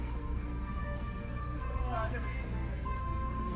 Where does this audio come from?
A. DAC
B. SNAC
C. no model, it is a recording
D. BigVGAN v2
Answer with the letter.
B